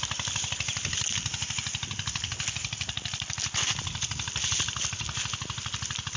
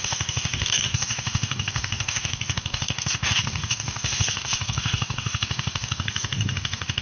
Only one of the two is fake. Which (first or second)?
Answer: second